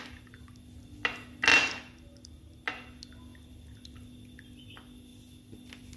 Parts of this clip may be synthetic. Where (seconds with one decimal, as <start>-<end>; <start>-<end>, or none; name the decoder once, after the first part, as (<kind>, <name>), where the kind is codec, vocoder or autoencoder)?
none